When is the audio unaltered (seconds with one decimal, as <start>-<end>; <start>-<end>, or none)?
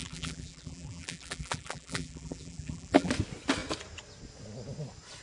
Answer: 3.1-5.2